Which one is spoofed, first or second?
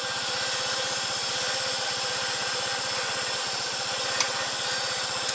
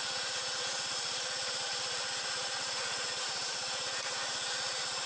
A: second